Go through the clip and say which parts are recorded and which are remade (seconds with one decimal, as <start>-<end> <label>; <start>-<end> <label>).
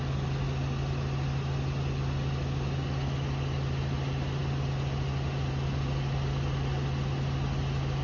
0.0-8.0 recorded